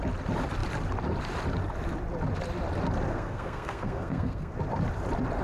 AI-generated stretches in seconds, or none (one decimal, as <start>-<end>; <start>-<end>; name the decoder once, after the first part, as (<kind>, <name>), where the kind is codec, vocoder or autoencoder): 3.1-4.5 (codec, SNAC)